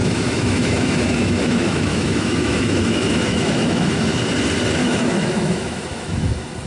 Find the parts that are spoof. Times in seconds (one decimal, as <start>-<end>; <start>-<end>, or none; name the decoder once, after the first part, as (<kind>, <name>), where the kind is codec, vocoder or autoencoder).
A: 0.0-4.0 (autoencoder, DAC-VAE); 4.8-6.3